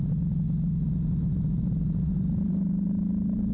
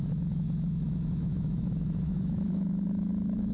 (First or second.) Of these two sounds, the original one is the first